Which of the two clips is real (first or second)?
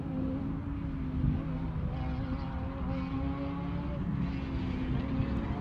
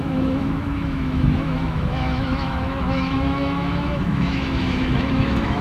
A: first